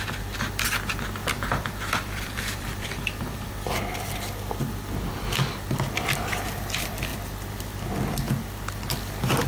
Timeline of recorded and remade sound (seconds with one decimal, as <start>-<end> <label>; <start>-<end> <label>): 0.0-1.2 recorded; 1.2-3.5 remade; 3.5-9.5 recorded